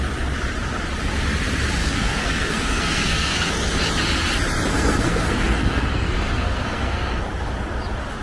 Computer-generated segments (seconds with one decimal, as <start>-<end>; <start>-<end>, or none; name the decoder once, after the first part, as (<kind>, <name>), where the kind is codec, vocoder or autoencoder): 1.8-3.5 (codec, SNAC); 4.7-7.3